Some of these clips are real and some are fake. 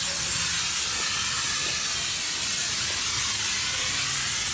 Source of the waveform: real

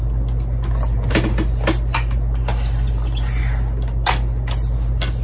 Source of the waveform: real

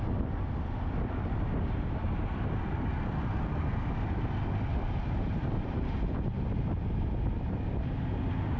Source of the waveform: real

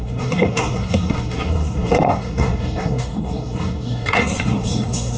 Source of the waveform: fake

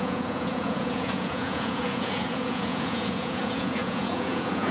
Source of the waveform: fake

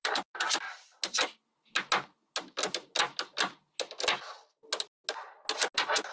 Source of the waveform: real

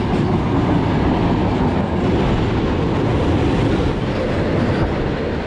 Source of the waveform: real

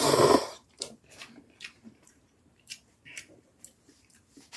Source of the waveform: fake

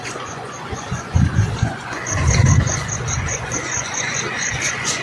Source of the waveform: fake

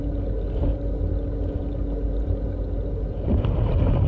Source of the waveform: real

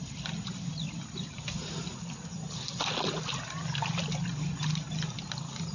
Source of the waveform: real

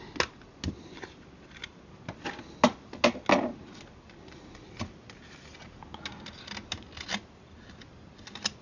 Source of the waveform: real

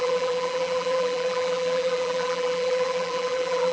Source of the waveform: fake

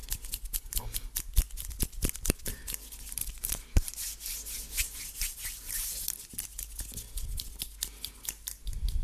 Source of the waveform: real